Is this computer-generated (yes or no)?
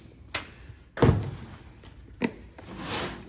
no